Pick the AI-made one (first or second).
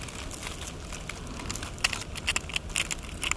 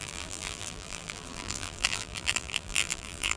second